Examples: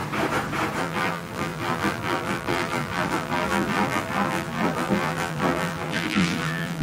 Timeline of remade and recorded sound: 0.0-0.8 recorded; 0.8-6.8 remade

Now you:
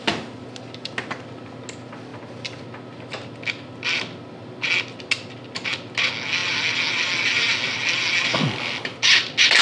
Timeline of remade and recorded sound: 0.0-9.6 recorded